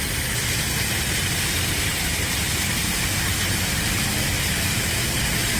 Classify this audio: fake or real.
real